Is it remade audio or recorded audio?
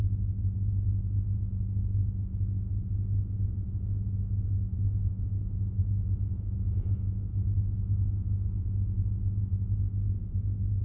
remade